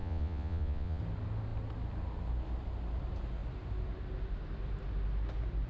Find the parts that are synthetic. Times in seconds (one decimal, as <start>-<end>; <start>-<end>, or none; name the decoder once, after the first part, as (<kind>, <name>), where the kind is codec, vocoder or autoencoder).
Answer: 0.0-1.0 (vocoder, Vocos)